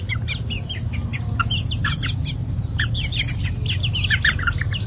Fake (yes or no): no